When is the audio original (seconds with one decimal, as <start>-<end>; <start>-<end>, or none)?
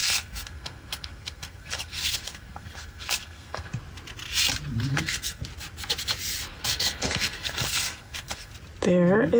3.8-4.9; 5.4-6.5; 8.5-9.4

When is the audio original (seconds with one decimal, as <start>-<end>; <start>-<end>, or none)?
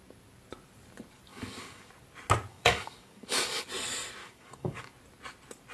0.0-1.3; 1.9-2.5; 3.7-4.2; 4.9-5.7